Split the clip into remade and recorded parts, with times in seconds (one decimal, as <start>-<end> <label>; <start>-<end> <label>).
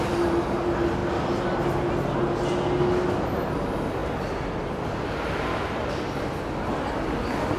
0.0-7.6 recorded